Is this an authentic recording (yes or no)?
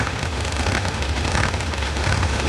no